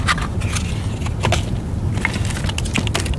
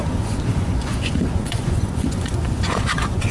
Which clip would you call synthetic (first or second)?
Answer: second